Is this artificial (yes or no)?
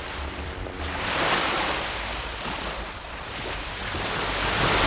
yes